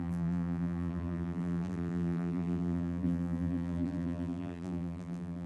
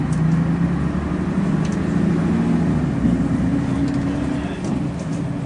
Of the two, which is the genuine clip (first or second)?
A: second